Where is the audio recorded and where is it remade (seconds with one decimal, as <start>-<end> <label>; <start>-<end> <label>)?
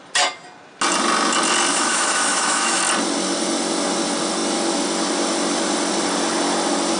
0.0-1.7 recorded; 1.7-2.8 remade; 2.8-7.0 recorded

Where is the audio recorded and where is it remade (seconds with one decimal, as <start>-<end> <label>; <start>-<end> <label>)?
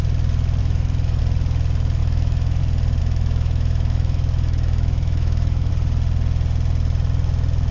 0.0-0.6 recorded; 0.6-1.2 remade; 1.2-2.0 recorded; 2.0-2.6 remade; 2.6-3.0 recorded; 3.0-5.7 remade; 5.7-7.7 recorded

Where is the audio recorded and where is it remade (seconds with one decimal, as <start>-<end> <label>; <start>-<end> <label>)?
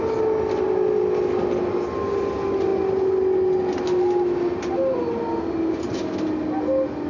0.0-7.1 recorded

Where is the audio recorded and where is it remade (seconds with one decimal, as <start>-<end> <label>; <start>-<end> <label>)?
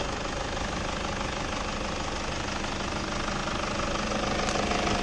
0.0-5.0 recorded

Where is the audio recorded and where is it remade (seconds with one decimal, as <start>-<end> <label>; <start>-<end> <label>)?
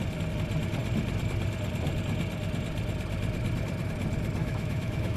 0.0-4.4 recorded; 4.4-5.2 remade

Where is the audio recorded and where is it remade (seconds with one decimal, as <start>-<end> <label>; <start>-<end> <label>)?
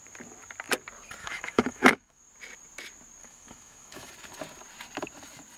0.0-1.2 recorded; 1.2-2.2 remade; 2.2-3.2 recorded; 3.2-4.1 remade; 4.1-5.6 recorded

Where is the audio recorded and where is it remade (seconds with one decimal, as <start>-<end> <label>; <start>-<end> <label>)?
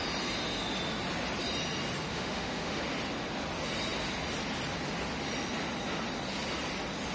0.0-2.1 recorded; 2.1-2.8 remade; 2.8-7.1 recorded